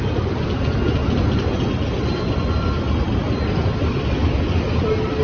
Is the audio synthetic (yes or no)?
no